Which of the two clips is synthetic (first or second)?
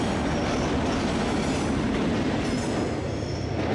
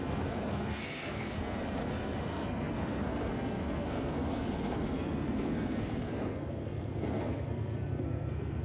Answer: second